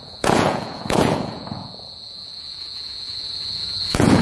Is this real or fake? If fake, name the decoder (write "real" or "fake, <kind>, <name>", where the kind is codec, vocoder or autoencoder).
fake, vocoder, Vocos